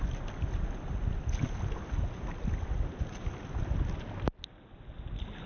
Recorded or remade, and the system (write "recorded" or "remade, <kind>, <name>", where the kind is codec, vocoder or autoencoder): recorded